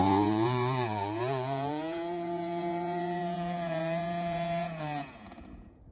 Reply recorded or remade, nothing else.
remade